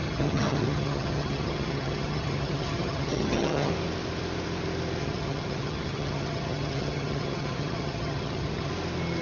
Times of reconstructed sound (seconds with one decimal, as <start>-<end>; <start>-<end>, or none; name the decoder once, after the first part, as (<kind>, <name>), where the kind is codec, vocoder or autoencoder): 0.0-3.7 (vocoder, HiFi-GAN); 5.0-8.7